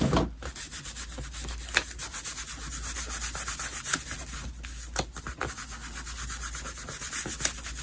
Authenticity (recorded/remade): recorded